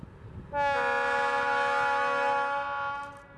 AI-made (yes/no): no